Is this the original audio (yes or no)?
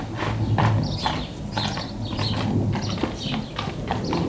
yes